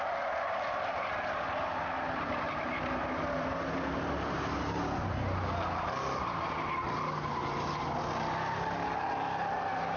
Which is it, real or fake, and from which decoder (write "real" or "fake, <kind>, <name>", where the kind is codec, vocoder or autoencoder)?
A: real